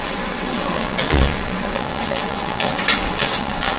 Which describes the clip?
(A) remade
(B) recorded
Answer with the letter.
A